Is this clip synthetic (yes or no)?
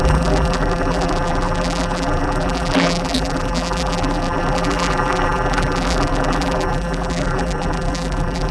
yes